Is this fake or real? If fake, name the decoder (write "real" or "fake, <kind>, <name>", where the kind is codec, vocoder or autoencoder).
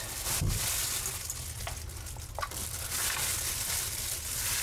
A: real